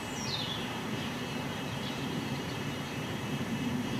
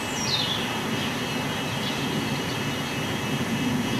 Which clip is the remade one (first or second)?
first